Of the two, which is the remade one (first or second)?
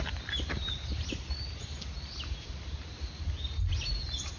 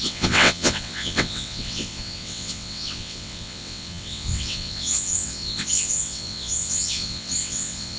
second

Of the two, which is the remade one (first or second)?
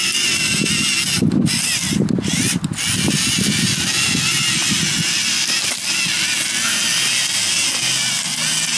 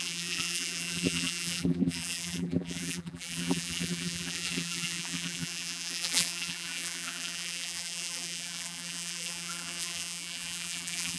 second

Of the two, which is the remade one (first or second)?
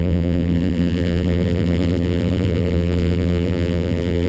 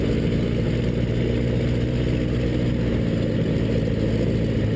first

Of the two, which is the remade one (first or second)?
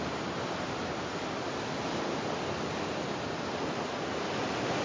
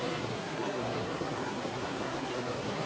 second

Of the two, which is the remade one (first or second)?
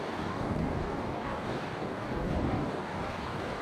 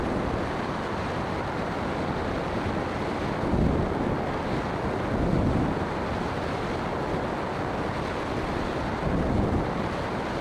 first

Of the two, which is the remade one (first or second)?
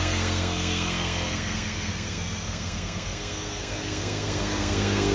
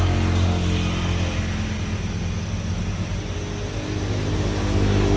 first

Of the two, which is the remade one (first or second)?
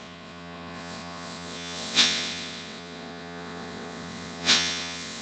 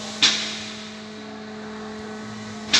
first